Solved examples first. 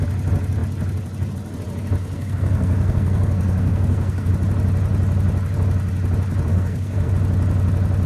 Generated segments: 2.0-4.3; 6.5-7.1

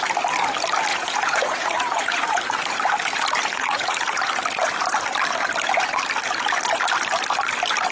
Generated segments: 0.9-2.4; 3.5-4.3

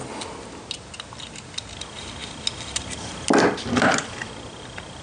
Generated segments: none

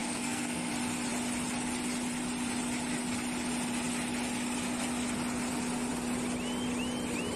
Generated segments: 0.0-0.7

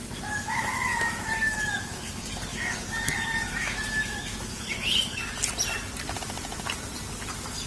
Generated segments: 0.0-2.1; 2.5-5.3

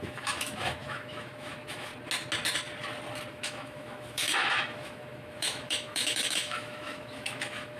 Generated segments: 0.0-1.9; 3.3-7.8

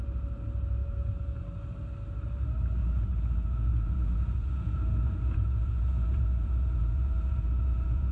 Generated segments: 0.8-1.4; 2.8-8.1

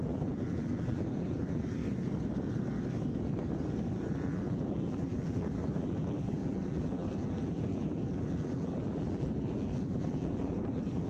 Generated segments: 0.0-1.8; 4.1-11.1